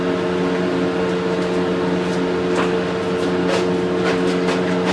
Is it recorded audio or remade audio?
recorded